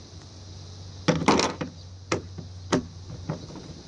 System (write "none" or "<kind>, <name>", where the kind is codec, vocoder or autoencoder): none